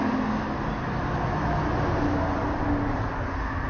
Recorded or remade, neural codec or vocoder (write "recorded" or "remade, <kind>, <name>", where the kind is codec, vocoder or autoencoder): recorded